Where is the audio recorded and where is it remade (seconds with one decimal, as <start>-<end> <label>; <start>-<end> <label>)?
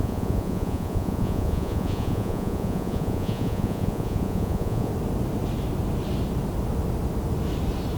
0.0-4.9 remade; 4.9-8.0 recorded